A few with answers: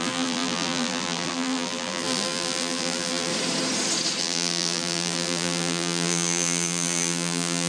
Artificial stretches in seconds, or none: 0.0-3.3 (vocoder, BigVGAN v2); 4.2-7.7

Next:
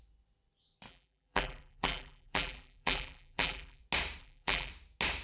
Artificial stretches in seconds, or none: 0.9-3.8 (vocoder, BigVGAN v2); 4.2-4.7

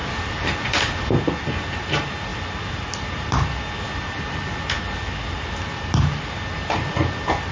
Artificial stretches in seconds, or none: 0.0-1.1 (vocoder, BigVGAN v2)

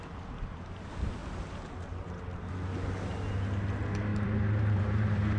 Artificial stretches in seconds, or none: 4.1-5.4 (vocoder, BigVGAN v2)